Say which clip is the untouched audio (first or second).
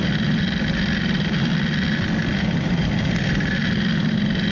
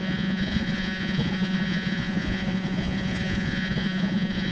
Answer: first